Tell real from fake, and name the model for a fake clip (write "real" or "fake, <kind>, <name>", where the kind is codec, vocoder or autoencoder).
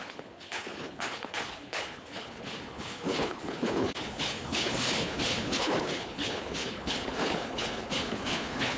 fake, codec, HILCodec